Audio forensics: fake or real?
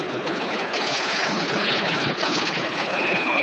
fake